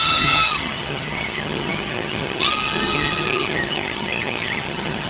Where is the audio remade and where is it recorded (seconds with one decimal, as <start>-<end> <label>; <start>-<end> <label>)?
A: 0.0-5.1 remade